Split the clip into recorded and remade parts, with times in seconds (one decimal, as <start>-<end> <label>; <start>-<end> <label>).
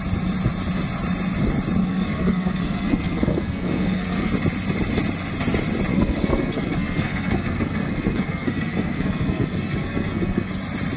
0.0-1.8 recorded; 1.8-4.3 remade; 4.3-5.9 recorded; 5.9-10.5 remade; 10.5-11.0 recorded